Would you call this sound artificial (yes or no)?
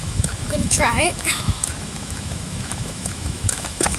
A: yes